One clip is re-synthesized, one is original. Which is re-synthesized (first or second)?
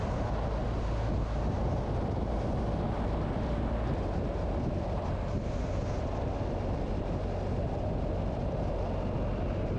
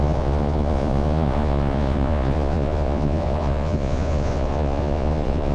second